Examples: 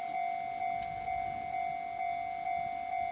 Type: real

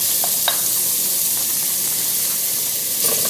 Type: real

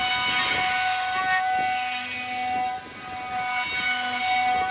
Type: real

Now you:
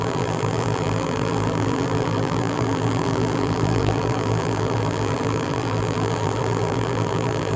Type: fake